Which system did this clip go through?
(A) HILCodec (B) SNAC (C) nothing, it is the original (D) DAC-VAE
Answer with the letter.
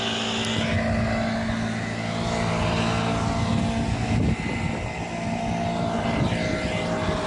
C